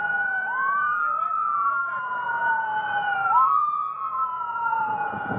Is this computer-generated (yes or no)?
yes